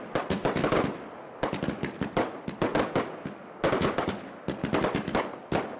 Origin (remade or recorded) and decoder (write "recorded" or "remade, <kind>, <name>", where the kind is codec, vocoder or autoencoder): recorded